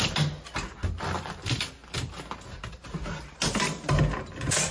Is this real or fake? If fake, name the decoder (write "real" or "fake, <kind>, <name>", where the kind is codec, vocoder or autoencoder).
real